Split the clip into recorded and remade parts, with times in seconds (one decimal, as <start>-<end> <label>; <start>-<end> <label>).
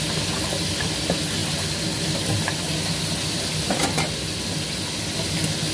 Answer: 0.0-5.7 recorded